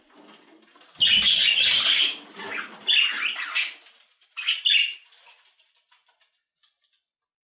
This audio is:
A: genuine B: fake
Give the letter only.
A